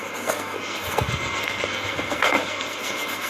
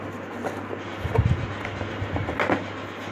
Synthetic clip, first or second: first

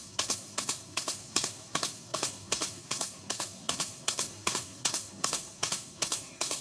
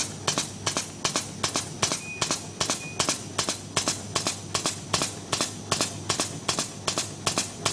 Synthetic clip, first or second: first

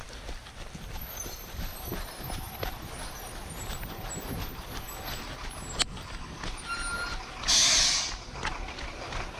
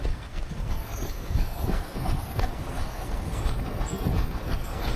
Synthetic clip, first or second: second